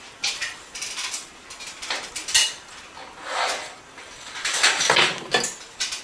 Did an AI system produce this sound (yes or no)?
no